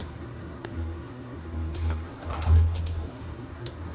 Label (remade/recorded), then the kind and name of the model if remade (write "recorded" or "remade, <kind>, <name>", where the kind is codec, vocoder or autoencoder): remade, codec, SNAC